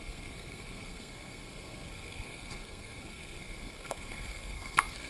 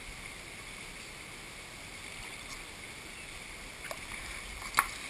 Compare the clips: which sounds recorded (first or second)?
second